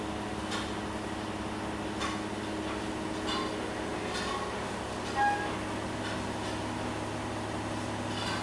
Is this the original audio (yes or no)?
yes